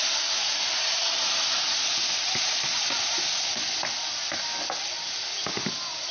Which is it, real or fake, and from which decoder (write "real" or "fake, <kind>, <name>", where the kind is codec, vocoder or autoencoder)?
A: real